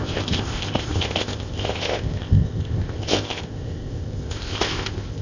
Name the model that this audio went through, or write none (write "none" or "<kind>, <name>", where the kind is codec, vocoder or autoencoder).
codec, ZipCodec